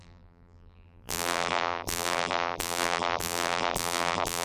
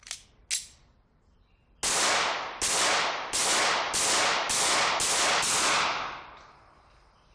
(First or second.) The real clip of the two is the second